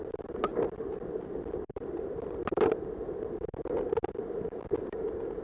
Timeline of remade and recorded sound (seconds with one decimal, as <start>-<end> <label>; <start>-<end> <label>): 0.0-0.5 recorded; 0.5-3.7 remade; 3.7-5.4 recorded